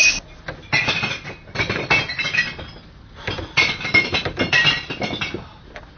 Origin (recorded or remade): recorded